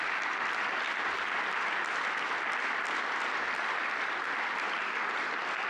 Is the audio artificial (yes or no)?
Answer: yes